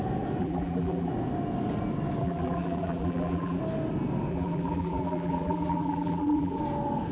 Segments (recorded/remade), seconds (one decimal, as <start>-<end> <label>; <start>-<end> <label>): 0.0-0.4 recorded; 0.4-1.1 remade; 1.1-2.2 recorded; 2.2-3.6 remade; 3.6-4.3 recorded; 4.3-6.6 remade; 6.6-7.1 recorded